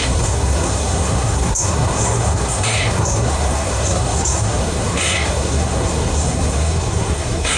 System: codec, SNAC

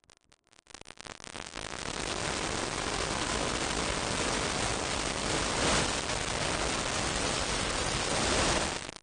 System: none